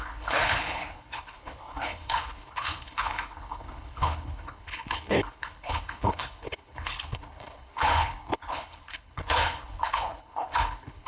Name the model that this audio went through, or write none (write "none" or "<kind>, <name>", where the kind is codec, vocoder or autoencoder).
codec, HILCodec